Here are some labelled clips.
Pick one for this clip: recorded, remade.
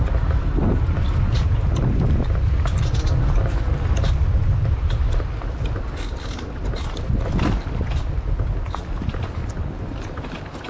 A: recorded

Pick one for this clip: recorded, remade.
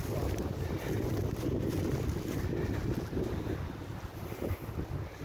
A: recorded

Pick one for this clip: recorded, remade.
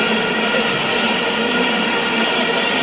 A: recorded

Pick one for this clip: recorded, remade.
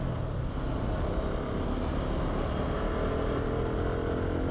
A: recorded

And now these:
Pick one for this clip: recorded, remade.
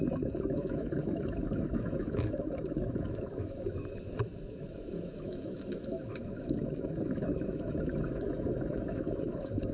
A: remade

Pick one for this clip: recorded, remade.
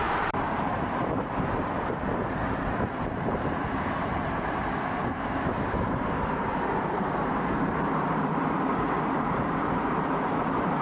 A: remade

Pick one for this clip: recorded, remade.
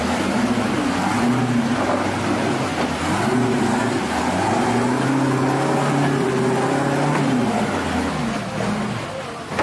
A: recorded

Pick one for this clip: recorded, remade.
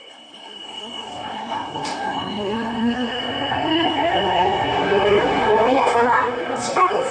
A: remade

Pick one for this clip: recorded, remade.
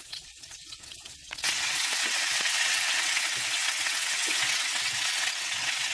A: remade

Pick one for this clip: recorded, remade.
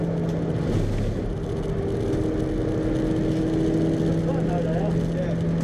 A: recorded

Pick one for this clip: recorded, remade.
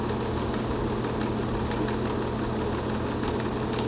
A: recorded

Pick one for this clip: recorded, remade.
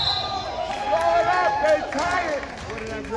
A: recorded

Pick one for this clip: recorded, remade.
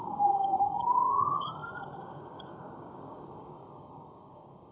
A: remade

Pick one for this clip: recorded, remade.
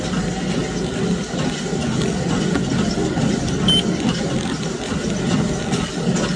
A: recorded